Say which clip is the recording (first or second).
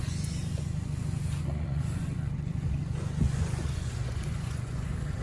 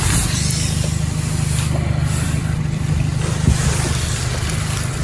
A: second